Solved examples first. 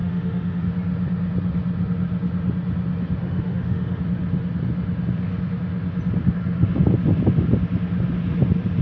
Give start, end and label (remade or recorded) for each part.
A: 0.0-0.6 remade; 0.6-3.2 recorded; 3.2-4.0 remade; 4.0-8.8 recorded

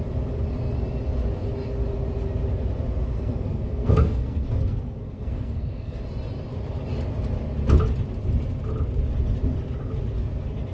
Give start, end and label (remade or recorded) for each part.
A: 0.0-3.1 recorded; 3.1-6.0 remade; 6.0-10.7 recorded

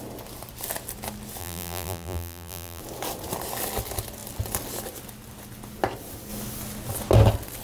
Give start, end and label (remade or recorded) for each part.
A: 0.0-1.4 recorded; 1.4-2.8 remade; 2.8-7.6 recorded